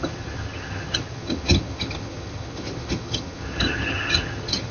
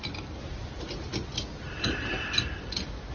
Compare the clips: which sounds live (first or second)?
second